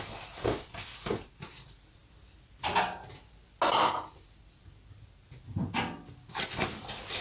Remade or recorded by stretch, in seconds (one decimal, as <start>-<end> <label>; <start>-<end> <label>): 0.0-7.2 recorded